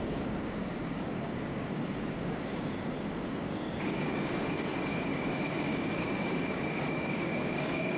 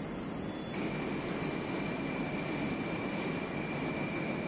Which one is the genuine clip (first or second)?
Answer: second